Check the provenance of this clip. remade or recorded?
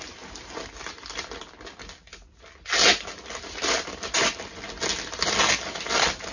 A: recorded